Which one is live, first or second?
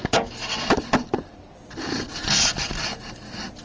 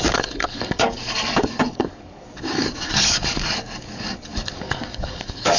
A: first